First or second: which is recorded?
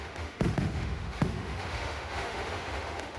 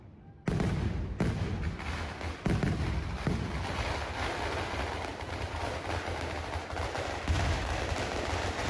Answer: second